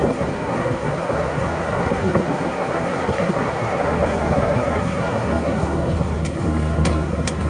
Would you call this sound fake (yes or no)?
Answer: yes